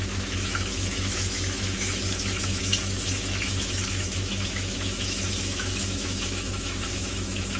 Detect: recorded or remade remade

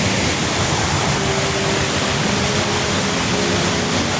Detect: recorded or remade recorded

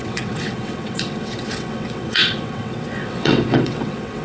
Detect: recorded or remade remade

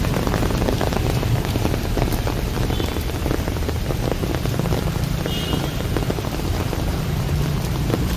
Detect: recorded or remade remade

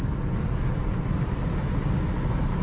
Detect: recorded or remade recorded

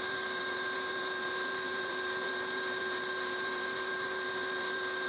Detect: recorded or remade remade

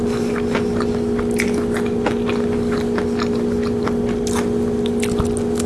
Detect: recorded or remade recorded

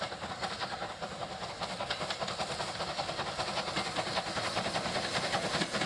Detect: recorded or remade recorded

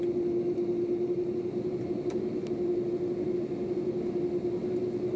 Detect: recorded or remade recorded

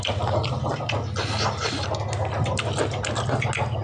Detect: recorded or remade recorded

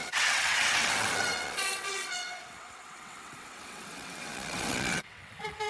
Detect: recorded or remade remade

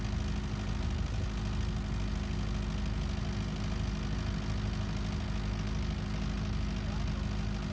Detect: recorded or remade recorded